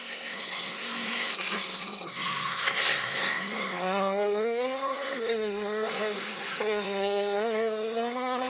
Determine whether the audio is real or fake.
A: fake